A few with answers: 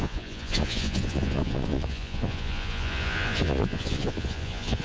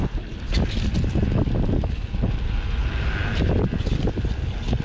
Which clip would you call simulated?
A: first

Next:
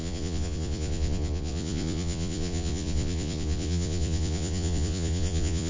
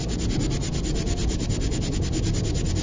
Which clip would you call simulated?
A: first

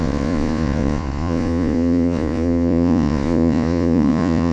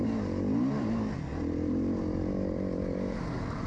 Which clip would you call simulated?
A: first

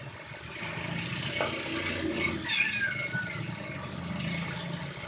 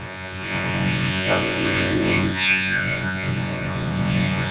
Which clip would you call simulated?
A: second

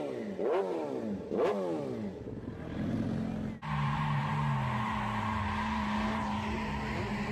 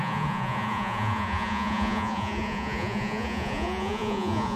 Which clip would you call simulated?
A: second